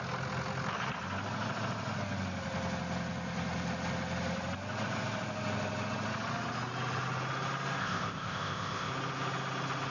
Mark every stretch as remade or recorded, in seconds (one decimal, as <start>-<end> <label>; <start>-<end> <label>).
0.0-7.8 recorded; 7.8-8.9 remade; 8.9-9.9 recorded